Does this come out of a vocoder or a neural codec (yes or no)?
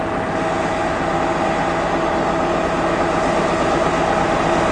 no